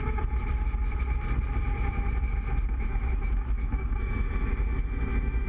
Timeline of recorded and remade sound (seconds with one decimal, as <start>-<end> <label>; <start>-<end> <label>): 0.0-2.7 recorded; 2.7-5.5 remade

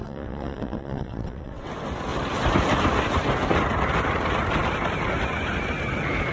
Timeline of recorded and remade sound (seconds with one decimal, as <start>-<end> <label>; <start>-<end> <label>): 0.0-1.7 remade; 1.7-6.3 recorded

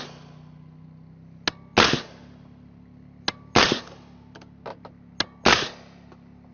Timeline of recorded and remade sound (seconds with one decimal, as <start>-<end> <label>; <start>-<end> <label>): 0.0-6.5 recorded